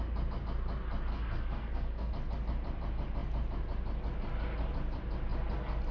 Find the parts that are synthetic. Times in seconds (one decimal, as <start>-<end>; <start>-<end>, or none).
1.1-2.1

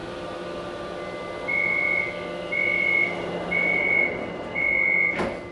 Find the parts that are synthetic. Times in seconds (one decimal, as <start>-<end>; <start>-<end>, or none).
none

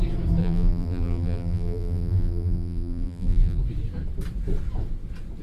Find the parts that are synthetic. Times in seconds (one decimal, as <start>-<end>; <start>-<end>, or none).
0.4-3.6